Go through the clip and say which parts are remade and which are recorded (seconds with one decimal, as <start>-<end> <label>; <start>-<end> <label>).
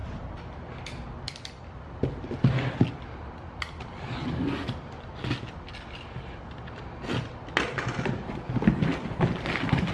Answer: 0.0-9.9 recorded